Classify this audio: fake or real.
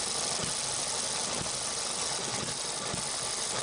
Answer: real